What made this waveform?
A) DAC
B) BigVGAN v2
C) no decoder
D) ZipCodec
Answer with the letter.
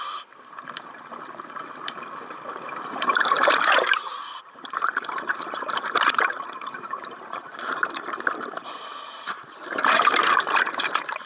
B